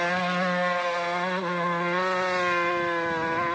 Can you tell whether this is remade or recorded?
recorded